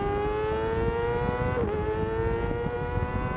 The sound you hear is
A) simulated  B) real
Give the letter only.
B